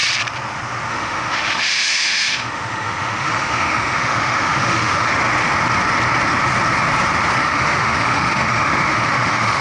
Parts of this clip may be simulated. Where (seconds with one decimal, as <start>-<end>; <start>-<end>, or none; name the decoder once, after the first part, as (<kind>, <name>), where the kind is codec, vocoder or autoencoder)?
0.9-5.1 (autoencoder, DAC-VAE); 7.4-9.6

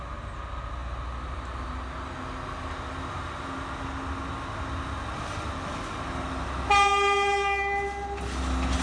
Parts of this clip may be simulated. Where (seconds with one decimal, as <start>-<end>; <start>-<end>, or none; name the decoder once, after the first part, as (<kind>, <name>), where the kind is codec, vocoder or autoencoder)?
none

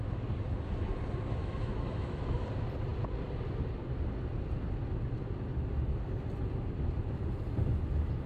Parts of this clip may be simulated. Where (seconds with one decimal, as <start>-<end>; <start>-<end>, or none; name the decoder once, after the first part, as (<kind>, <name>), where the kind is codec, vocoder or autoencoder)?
1.4-2.2 (autoencoder, DAC-VAE)

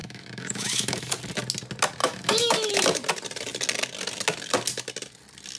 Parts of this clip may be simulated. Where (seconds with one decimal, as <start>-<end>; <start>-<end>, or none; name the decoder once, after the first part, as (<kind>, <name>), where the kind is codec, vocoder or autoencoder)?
0.0-1.1 (autoencoder, DAC-VAE); 2.0-2.8

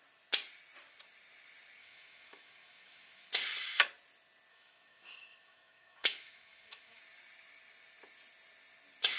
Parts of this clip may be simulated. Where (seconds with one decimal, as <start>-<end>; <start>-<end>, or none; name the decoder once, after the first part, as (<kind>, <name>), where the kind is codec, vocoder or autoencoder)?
1.8-3.3 (autoencoder, DAC-VAE); 4.5-7.0